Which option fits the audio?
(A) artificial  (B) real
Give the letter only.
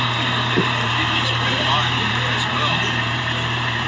A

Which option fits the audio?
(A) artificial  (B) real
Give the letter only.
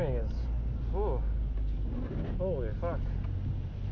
B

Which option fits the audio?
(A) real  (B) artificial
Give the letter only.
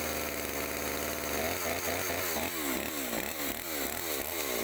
A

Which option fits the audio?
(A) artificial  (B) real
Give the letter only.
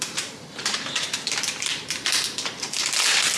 A